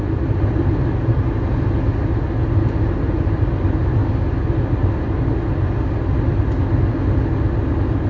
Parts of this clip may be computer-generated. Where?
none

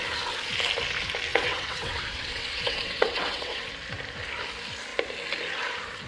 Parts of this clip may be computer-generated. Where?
1.3-3.7 (vocoder, WaveNeXt)